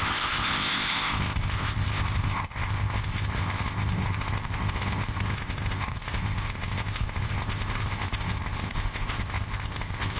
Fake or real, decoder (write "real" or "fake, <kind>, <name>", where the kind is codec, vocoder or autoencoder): fake, codec, ZipCodec